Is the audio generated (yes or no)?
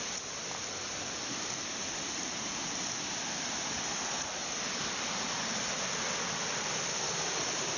no